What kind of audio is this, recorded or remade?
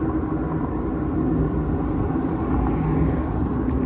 recorded